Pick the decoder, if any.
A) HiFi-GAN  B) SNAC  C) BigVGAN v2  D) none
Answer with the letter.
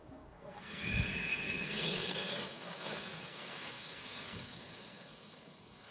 B